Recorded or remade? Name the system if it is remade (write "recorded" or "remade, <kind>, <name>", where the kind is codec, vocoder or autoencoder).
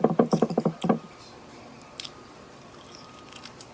remade, vocoder, BigVGAN v2